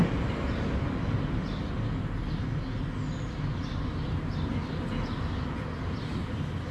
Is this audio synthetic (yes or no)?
no